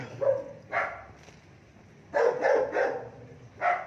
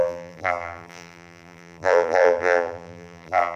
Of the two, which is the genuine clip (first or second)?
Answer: first